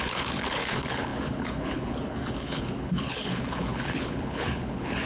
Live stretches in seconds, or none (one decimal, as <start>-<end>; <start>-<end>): none

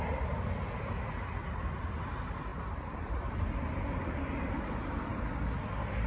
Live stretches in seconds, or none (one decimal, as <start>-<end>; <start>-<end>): 0.0-6.1

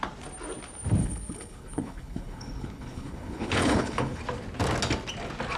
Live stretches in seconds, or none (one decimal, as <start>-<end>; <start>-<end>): 0.0-1.0; 4.2-5.6

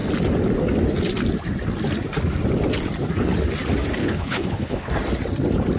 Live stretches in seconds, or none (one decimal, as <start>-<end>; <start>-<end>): 0.0-4.0; 4.9-5.8

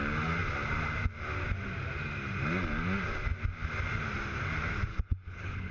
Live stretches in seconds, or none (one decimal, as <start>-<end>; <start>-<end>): 0.0-4.9

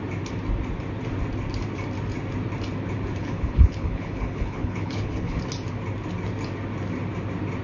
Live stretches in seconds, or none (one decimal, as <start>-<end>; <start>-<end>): 0.0-3.2; 5.4-7.6